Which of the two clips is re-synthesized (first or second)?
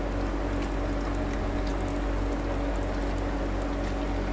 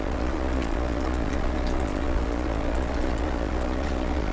second